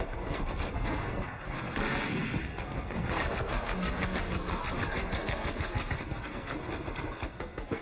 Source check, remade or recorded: remade